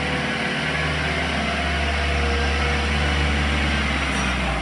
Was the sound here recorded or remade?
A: recorded